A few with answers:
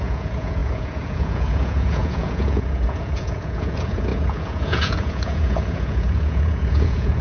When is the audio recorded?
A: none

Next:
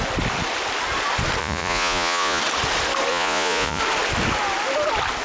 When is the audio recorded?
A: 0.0-1.4; 2.4-3.1; 3.8-5.2